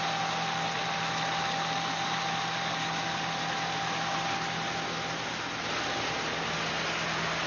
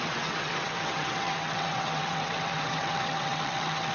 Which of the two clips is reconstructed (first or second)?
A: second